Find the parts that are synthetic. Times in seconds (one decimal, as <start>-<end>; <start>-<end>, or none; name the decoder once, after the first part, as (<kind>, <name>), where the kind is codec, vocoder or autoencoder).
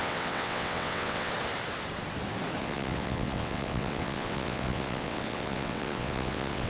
0.0-1.3 (vocoder, WaveNeXt); 2.6-6.7